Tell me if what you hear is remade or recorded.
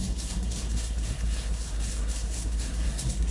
remade